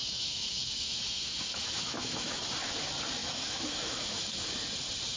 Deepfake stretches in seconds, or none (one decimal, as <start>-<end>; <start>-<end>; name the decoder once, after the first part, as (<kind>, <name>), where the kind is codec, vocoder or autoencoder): 0.0-2.4 (autoencoder, DAC-VAE); 3.2-4.5